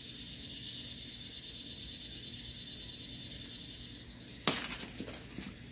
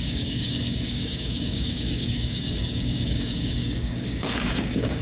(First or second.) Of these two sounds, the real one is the first